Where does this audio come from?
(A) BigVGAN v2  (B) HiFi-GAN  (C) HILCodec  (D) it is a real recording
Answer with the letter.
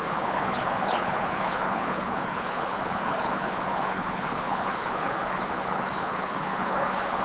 C